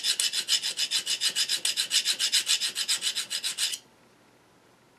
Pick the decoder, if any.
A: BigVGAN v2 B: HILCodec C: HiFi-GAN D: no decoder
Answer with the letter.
D